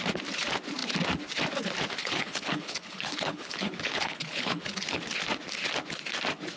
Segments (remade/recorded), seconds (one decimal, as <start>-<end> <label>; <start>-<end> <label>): 0.0-2.0 recorded; 2.0-5.0 remade; 5.0-6.6 recorded